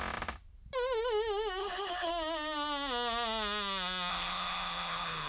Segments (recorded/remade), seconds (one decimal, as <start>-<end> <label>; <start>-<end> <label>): 0.0-1.6 recorded; 1.6-2.1 remade; 2.1-4.1 recorded; 4.1-5.3 remade